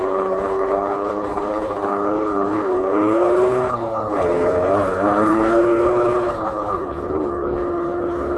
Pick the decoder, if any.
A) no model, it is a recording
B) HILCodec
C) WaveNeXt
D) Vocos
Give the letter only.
B